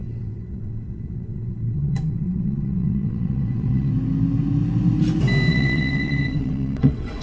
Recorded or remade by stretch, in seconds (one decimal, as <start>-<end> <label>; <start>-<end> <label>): 0.0-3.9 remade; 3.9-5.5 recorded; 5.5-7.2 remade